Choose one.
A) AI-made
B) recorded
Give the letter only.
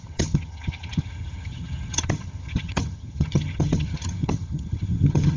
A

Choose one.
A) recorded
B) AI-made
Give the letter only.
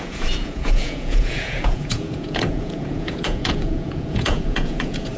B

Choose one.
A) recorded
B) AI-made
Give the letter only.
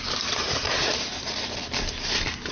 A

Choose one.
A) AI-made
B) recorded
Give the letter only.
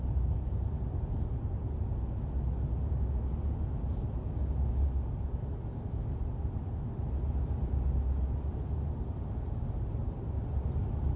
B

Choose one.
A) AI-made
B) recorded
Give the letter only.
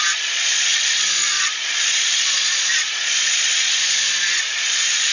A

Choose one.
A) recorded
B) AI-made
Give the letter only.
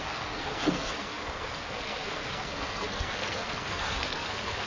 B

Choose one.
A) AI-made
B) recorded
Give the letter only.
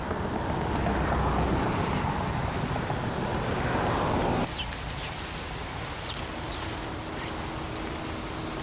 B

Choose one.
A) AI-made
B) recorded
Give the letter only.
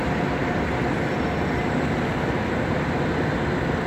B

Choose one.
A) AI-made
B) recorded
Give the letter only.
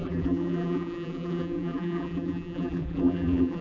A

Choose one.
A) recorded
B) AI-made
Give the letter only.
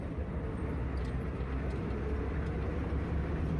A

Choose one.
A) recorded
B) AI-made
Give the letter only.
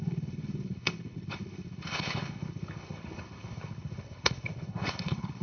B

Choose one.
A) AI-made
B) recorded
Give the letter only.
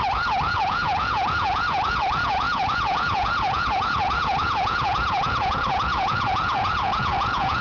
A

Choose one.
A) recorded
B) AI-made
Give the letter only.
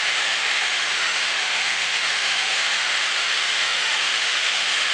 B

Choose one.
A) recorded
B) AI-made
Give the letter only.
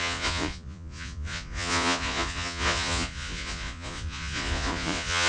B